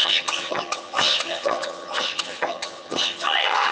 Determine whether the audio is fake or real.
fake